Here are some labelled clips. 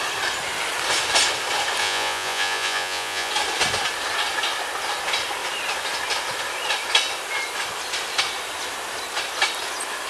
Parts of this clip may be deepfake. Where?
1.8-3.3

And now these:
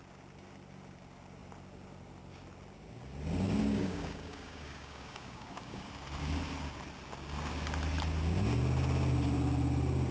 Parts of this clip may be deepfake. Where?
3.6-5.9

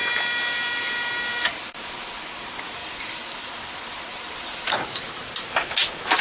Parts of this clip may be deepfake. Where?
2.8-3.5; 4.1-5.2

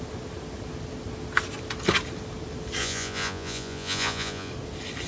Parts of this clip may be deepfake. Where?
2.8-4.5

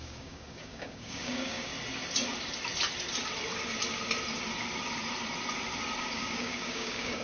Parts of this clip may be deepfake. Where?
0.0-1.7; 6.0-7.2

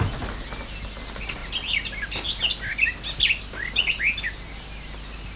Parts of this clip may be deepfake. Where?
none